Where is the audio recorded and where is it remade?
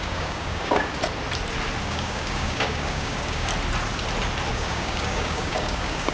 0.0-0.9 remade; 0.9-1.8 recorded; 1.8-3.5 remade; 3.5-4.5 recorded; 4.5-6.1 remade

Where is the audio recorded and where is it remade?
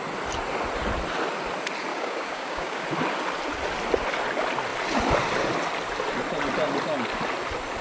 0.0-1.9 recorded; 1.9-2.8 remade; 2.8-7.8 recorded